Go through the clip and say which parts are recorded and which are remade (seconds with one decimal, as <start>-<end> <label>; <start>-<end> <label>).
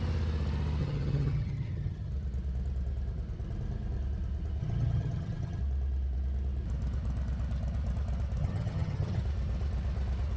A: 0.0-0.8 recorded; 0.8-2.1 remade; 2.1-4.6 recorded; 4.6-5.6 remade; 5.6-8.4 recorded; 8.4-9.2 remade; 9.2-10.4 recorded